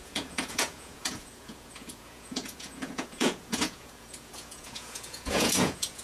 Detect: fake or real fake